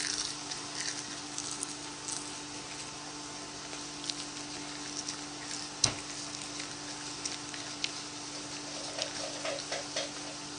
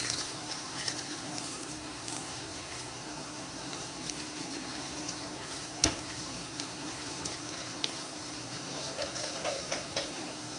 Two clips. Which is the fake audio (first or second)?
second